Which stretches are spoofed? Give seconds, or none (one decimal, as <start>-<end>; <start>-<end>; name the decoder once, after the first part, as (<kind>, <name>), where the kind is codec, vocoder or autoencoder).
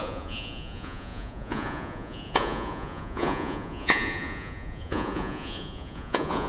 0.0-6.5 (vocoder, Vocos)